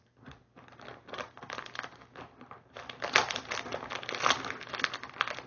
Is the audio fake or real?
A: real